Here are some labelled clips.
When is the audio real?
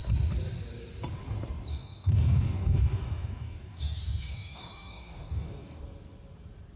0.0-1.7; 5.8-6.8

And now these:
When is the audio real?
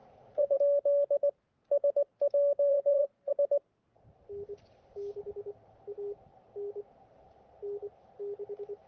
0.6-2.7; 3.3-8.9